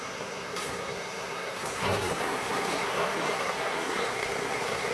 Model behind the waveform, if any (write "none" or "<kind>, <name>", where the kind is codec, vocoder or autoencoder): codec, SNAC